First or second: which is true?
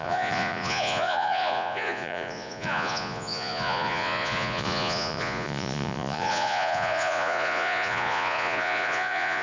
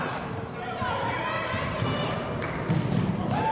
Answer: second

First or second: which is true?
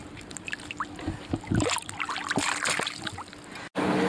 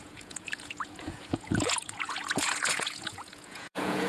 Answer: first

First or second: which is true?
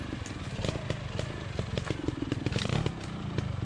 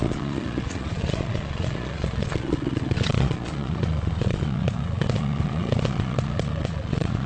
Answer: first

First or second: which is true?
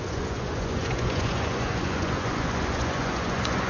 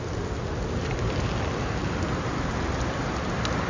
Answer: second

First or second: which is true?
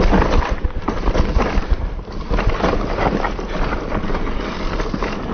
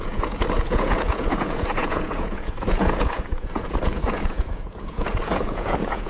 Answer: first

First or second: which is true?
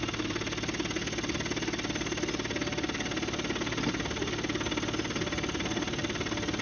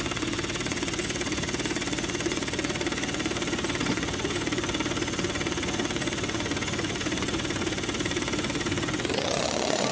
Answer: first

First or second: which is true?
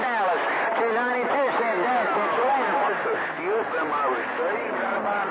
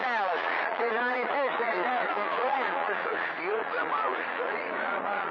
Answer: first